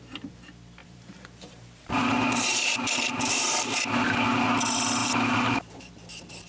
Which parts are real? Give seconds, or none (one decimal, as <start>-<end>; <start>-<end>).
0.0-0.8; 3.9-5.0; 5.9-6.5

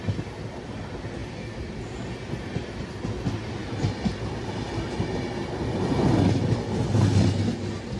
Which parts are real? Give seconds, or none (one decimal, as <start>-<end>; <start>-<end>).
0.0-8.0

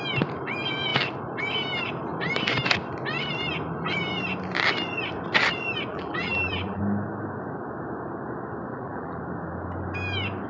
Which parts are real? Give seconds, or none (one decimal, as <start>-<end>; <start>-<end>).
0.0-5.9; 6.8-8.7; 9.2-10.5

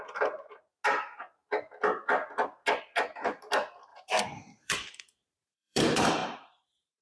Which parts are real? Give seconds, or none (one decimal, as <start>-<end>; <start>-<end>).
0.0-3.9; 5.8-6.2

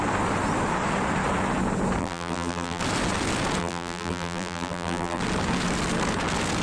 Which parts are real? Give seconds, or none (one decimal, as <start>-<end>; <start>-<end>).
0.0-2.0; 2.8-3.6; 5.2-6.6

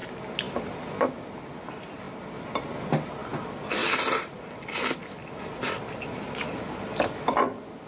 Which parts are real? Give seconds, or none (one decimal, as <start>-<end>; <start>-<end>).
0.0-7.9

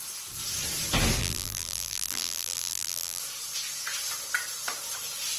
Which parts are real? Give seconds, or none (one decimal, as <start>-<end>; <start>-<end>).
0.0-1.2; 3.2-5.4

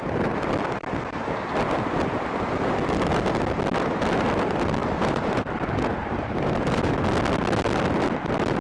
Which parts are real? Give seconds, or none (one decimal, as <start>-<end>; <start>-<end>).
0.0-4.8; 5.4-6.0; 6.9-8.6